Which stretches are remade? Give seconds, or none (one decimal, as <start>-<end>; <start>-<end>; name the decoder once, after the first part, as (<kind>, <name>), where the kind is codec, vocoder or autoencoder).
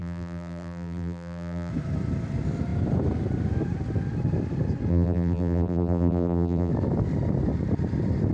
0.0-1.7 (vocoder, BigVGAN v2); 4.9-6.7